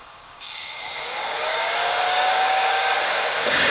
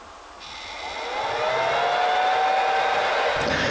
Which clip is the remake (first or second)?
first